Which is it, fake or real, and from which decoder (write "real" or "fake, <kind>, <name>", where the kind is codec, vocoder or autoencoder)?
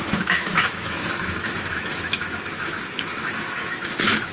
fake, autoencoder, DAC-VAE